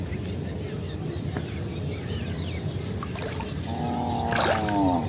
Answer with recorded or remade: recorded